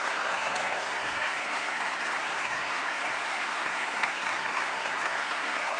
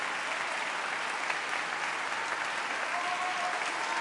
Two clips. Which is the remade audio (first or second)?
first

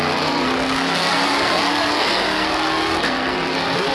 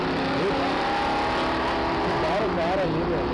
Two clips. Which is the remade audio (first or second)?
first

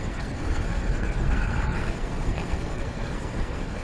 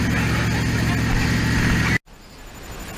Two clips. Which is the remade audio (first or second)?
first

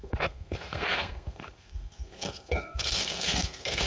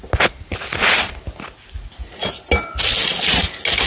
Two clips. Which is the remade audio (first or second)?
first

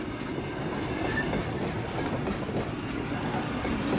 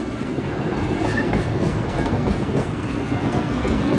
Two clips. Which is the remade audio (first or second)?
second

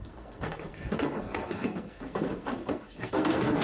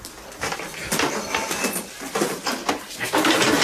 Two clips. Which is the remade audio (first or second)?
first